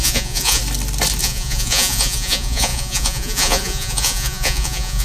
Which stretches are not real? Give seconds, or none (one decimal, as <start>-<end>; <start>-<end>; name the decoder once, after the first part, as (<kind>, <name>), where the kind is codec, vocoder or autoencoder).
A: 0.0-0.6 (vocoder, Vocos); 1.2-5.0